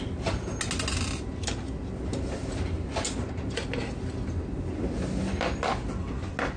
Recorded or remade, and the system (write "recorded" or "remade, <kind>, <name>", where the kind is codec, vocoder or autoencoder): recorded